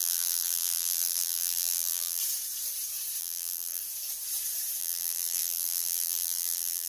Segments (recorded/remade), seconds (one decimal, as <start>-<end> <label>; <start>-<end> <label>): 0.0-2.2 remade; 2.2-3.2 recorded; 3.2-3.8 remade; 3.8-4.8 recorded; 4.8-6.9 remade